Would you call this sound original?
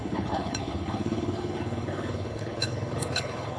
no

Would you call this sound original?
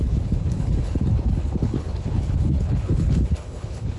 no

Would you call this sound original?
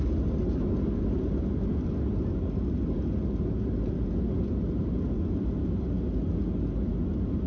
yes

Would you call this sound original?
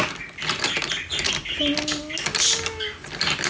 yes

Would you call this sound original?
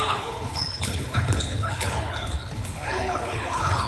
no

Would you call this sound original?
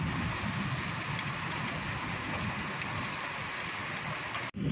yes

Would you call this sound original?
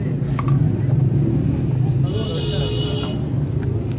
yes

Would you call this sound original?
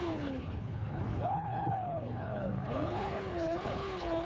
no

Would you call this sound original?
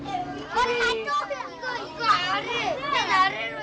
yes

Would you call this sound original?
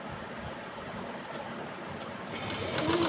yes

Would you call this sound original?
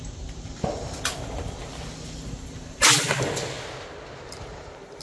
yes